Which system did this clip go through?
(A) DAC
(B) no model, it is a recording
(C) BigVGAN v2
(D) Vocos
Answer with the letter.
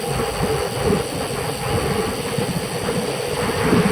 B